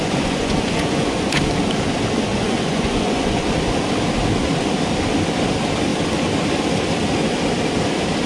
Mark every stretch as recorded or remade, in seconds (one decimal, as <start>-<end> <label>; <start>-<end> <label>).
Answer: 0.0-1.4 remade; 1.4-2.3 recorded; 2.3-3.5 remade; 3.5-8.3 recorded